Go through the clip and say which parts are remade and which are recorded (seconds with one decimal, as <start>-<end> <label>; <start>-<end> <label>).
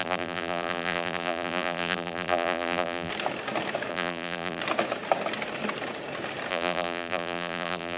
0.0-3.1 remade; 3.1-3.9 recorded; 3.9-4.6 remade; 4.6-6.5 recorded; 6.5-8.0 remade